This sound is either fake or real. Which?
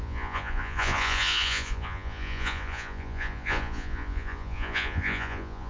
fake